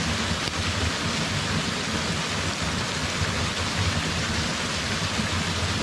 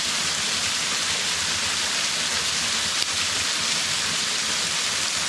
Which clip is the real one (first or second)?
first